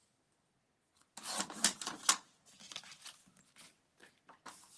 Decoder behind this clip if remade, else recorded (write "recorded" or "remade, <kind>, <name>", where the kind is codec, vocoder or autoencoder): recorded